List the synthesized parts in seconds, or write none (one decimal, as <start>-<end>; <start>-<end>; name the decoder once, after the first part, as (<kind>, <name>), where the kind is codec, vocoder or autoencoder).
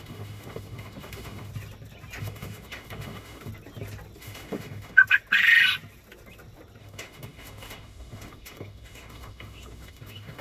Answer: 0.0-1.5 (autoencoder, DAC-VAE); 2.2-3.5; 4.2-5.0; 6.8-10.4